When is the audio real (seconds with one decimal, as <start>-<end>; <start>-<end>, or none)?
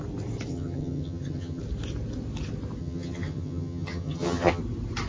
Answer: 0.0-0.5; 1.6-2.8; 4.6-5.1